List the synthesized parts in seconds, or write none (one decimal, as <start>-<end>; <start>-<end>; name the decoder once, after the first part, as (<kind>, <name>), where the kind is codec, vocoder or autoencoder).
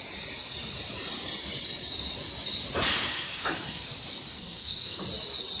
3.1-3.9 (codec, SNAC); 4.3-5.0